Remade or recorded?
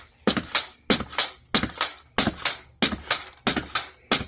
recorded